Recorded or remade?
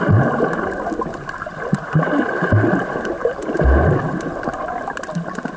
recorded